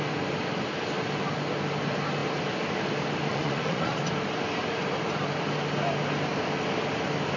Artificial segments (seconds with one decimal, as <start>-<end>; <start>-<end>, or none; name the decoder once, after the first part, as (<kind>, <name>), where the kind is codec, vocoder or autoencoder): 3.3-4.0 (vocoder, Vocos)